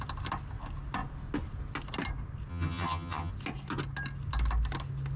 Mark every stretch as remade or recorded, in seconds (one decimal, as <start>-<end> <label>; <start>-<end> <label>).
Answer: 0.0-2.5 recorded; 2.5-3.3 remade; 3.3-5.2 recorded